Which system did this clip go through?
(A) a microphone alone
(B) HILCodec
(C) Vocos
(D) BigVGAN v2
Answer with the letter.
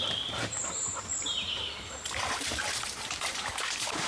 D